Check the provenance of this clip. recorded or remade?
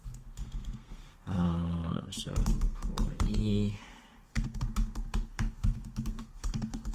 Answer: remade